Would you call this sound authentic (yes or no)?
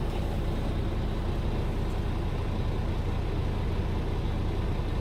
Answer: yes